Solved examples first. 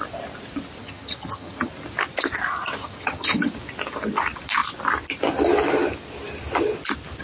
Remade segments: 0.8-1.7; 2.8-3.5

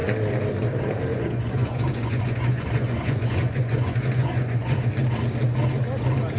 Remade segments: 1.1-4.9

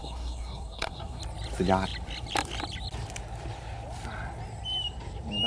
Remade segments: 0.0-1.2

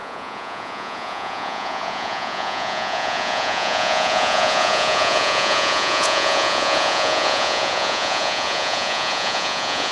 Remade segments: 0.0-9.9